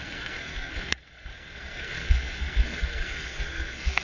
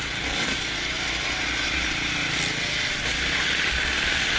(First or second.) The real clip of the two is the second